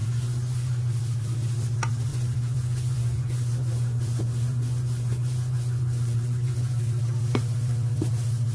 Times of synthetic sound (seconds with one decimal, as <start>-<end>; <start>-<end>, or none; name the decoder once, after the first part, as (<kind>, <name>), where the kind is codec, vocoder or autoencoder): 0.0-0.9 (vocoder, Vocos); 2.1-6.8